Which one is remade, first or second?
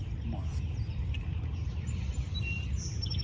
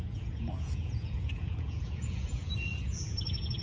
second